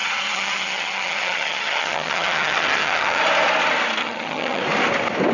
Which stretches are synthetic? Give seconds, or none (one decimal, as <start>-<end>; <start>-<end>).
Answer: 0.0-3.2; 4.0-4.6